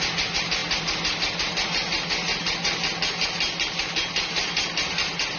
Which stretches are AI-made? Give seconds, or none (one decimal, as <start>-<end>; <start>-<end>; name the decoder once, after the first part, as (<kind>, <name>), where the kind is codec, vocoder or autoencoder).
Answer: none